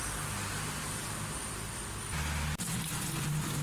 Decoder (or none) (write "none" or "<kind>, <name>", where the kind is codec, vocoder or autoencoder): none